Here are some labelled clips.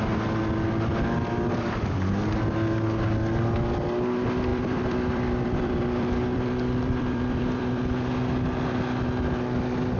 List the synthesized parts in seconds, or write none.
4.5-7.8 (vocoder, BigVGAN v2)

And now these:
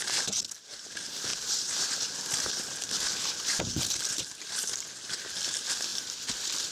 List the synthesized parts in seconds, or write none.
none

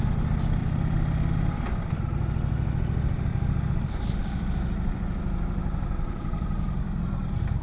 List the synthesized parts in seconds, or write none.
0.6-2.0 (vocoder, BigVGAN v2); 3.3-7.0

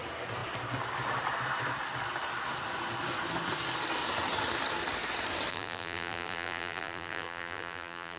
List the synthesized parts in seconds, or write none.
5.5-8.2 (vocoder, BigVGAN v2)

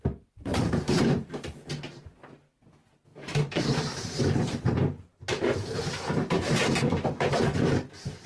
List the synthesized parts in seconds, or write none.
0.5-1.8 (vocoder, BigVGAN v2); 3.1-6.0; 6.6-7.2

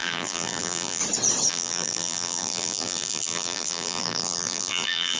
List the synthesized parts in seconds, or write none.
0.0-1.0 (vocoder, BigVGAN v2); 1.5-5.2

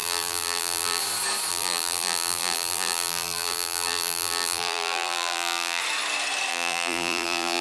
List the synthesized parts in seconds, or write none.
0.0-1.0 (vocoder, BigVGAN v2); 1.5-5.8; 6.5-7.6

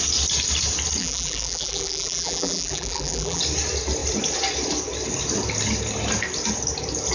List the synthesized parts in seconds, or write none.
1.0-3.4 (vocoder, BigVGAN v2)